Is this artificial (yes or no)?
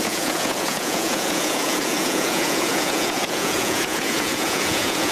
yes